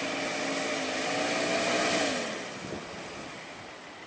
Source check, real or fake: real